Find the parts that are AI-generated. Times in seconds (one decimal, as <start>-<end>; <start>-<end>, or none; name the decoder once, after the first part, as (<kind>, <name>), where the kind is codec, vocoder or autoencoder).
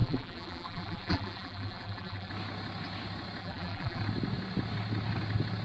0.0-2.3 (vocoder, BigVGAN v2); 3.4-4.0